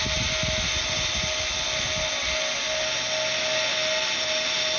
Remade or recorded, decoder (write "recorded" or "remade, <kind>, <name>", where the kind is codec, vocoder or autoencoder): recorded